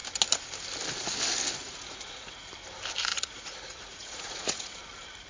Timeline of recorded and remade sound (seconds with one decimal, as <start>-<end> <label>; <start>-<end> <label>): 0.0-1.6 recorded; 1.6-2.5 remade; 2.5-3.1 recorded; 3.1-4.7 remade; 4.7-5.3 recorded